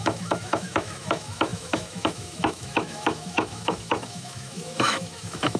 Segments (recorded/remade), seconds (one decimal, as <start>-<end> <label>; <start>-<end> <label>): 0.0-5.6 remade

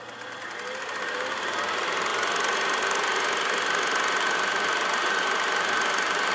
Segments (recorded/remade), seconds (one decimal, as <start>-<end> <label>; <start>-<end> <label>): 0.0-6.3 recorded

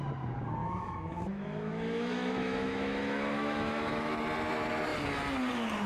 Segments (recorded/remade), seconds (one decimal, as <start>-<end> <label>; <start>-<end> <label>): 0.0-0.6 recorded; 0.6-4.1 remade; 4.1-5.9 recorded

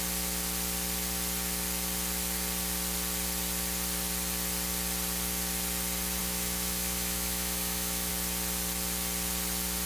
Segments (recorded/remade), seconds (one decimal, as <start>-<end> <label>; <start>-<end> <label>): 0.0-6.2 recorded; 6.2-8.1 remade; 8.1-9.9 recorded

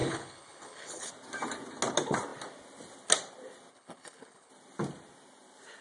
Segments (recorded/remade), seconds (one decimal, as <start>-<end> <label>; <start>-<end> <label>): 0.0-1.1 remade; 1.1-3.7 recorded; 3.7-4.5 remade; 4.5-5.8 recorded